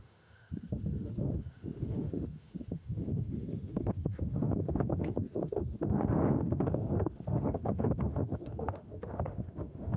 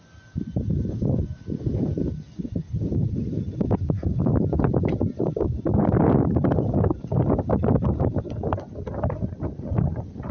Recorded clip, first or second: second